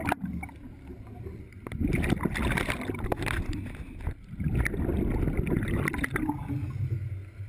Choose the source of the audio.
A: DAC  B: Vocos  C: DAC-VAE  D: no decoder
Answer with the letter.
D